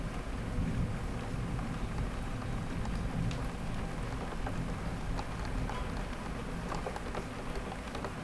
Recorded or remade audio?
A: recorded